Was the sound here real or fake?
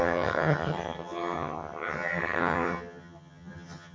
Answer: fake